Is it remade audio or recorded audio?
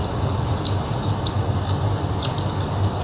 recorded